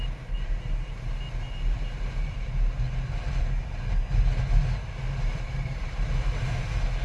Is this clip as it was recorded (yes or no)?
yes